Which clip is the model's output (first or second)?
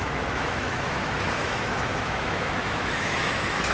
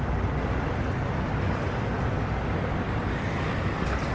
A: first